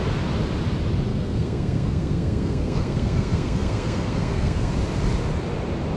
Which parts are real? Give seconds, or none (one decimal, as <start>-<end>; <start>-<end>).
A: 0.0-1.1; 4.7-6.0